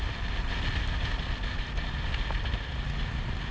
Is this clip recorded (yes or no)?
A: yes